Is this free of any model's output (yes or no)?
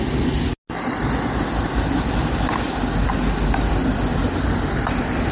yes